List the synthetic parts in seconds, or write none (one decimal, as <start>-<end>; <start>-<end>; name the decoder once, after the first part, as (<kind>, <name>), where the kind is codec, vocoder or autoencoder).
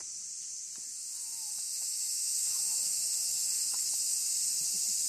0.9-4.0 (autoencoder, DAC-VAE)